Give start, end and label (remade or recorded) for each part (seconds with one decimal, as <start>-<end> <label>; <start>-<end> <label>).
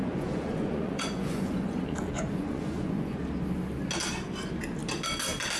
0.0-3.2 remade; 3.2-5.6 recorded